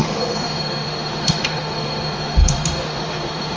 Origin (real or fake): fake